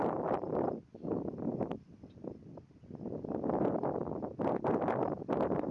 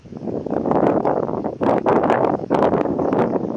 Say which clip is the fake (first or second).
second